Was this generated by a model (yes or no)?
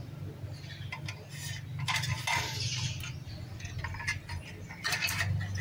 no